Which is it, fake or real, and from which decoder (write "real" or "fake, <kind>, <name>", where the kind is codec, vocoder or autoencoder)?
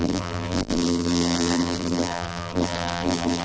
fake, vocoder, BigVGAN v2